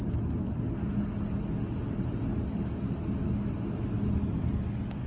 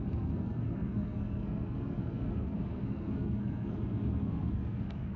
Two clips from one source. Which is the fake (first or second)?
second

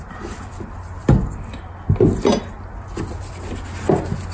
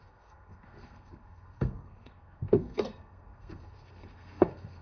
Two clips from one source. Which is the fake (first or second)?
second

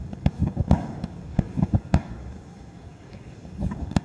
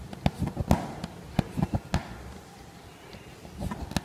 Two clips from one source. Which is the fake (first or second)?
first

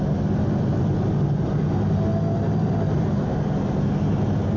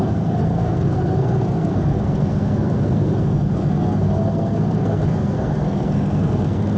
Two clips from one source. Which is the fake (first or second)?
second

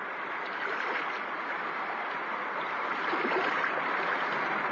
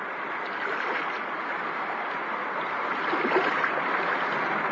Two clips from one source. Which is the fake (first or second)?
first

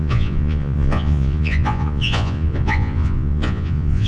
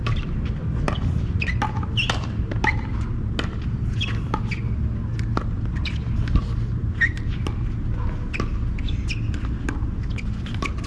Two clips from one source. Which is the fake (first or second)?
first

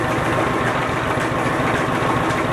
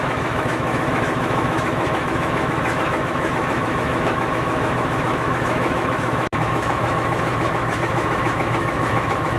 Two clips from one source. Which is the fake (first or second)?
second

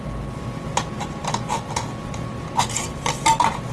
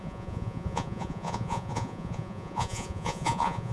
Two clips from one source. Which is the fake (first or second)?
second